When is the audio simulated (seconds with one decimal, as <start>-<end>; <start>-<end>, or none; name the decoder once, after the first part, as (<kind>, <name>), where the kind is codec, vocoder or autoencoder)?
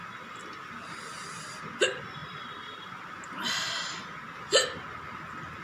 2.2-2.9 (vocoder, BigVGAN v2)